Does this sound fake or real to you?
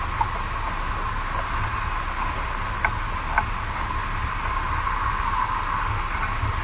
real